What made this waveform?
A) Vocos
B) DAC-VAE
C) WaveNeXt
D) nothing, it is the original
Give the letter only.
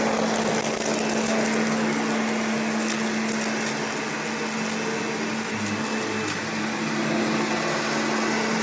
D